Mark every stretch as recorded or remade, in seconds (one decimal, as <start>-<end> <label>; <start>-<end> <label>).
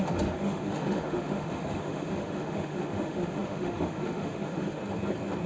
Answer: 0.0-4.8 remade; 4.8-5.5 recorded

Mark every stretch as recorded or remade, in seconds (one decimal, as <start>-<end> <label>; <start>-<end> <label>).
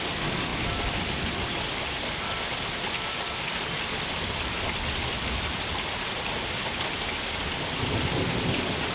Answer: 0.0-8.9 recorded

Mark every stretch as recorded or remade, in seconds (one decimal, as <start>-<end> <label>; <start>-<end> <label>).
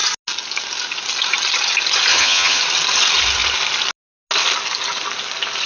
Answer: 0.0-2.1 recorded; 2.1-2.6 remade; 2.6-5.7 recorded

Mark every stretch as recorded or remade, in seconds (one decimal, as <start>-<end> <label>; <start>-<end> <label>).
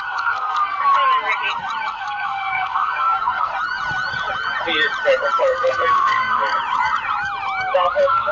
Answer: 0.0-0.8 remade; 0.8-1.9 recorded; 1.9-3.5 remade; 3.5-5.4 recorded; 5.4-6.4 remade; 6.4-7.9 recorded; 7.9-8.3 remade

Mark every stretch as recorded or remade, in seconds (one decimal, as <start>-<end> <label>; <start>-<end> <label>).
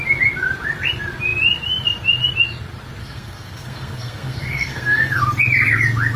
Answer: 0.0-3.0 recorded; 3.0-5.2 remade; 5.2-6.2 recorded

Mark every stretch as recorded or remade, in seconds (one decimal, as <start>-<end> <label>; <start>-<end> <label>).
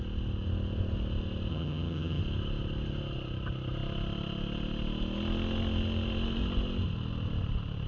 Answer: 0.0-1.5 recorded; 1.5-2.2 remade; 2.2-7.9 recorded